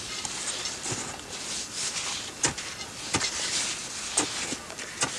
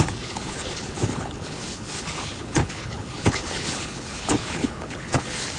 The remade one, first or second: second